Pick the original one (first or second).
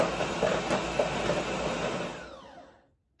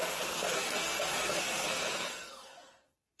first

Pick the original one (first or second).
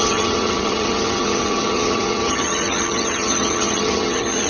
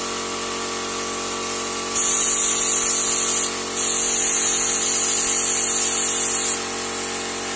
second